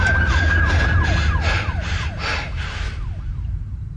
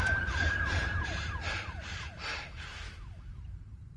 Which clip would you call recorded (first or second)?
first